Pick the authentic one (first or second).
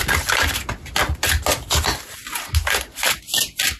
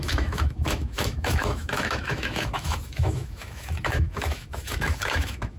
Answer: first